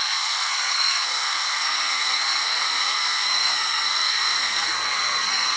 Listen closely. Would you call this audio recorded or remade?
remade